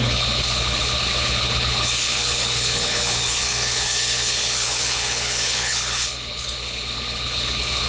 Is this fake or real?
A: fake